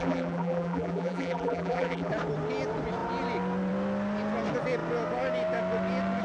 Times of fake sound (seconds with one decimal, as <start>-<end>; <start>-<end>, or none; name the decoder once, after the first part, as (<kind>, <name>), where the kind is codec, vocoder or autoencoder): 0.0-2.1 (vocoder, BigVGAN v2)